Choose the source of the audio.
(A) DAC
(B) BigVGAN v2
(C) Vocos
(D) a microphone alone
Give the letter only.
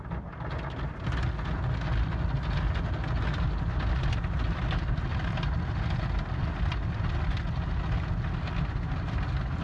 D